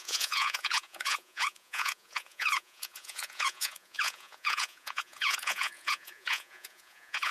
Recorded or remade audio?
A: remade